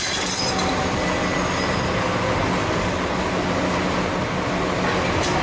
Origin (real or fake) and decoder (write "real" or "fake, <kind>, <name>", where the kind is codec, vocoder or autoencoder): real